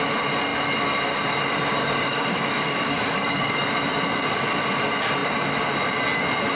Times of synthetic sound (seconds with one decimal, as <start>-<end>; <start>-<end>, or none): 1.8-3.7